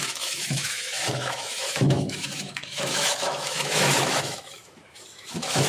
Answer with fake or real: fake